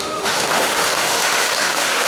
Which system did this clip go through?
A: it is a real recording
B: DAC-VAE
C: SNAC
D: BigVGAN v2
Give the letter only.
B